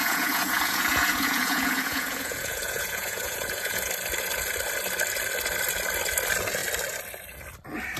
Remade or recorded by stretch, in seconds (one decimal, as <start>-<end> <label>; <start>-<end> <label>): 0.0-3.9 remade; 3.9-8.0 recorded